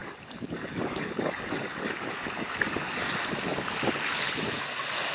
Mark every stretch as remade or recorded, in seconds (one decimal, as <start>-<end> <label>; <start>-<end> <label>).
0.0-3.1 remade; 3.1-5.1 recorded